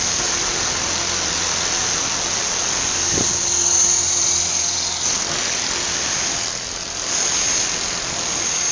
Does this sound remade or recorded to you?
recorded